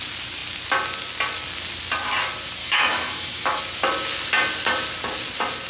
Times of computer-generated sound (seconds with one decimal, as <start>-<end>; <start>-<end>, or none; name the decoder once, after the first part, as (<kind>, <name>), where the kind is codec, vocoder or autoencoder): 2.6-3.6 (autoencoder, DAC-VAE)